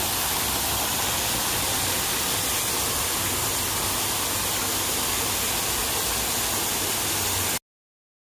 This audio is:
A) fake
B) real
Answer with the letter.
B